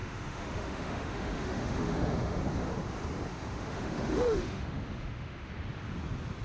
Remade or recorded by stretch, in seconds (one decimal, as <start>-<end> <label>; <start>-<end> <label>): 0.0-2.4 remade; 2.4-3.3 recorded; 3.3-5.5 remade; 5.5-6.4 recorded